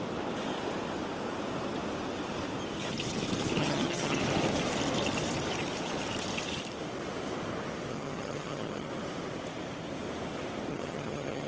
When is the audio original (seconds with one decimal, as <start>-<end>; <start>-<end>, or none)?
0.0-3.6; 4.2-7.9; 8.9-10.7

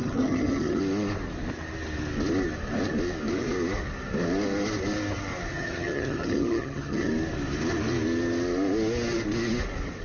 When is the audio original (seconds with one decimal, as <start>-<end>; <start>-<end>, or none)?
0.8-5.5; 7.1-10.0